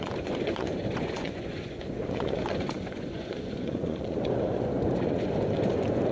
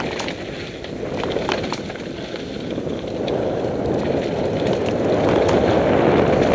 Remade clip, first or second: first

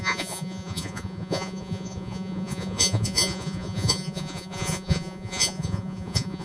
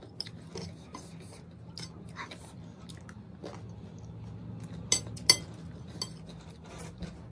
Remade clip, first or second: first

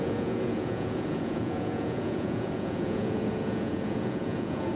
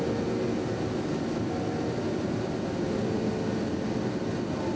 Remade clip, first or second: first